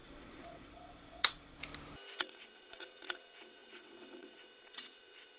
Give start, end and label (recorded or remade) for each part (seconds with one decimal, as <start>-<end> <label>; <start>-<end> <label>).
0.0-1.6 remade; 1.6-2.2 recorded; 2.2-5.4 remade